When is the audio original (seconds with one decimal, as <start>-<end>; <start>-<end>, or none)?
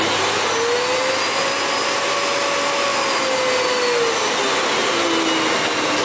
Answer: 0.0-6.0